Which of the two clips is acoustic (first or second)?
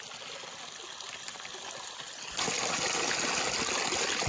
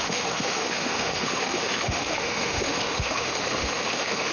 first